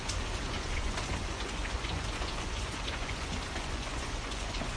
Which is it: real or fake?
fake